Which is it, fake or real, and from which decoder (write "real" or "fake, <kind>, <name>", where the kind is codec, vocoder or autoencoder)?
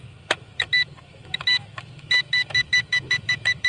fake, autoencoder, DAC-VAE